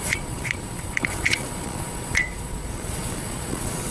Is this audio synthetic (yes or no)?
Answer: yes